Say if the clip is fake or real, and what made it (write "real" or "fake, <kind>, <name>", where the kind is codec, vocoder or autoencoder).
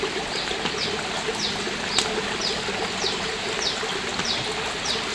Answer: real